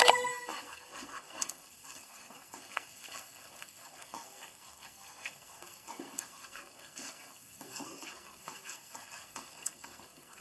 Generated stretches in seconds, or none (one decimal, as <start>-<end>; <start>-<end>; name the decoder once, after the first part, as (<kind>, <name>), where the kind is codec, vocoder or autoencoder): 0.0-10.4 (codec, SNAC)